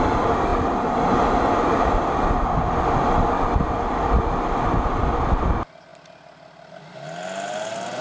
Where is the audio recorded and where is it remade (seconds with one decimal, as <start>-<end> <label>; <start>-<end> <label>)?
0.0-8.0 recorded